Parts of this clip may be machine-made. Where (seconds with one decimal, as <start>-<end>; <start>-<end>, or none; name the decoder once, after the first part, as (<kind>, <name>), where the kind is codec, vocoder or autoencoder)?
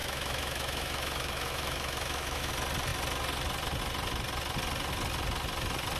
0.0-2.5 (autoencoder, DAC-VAE)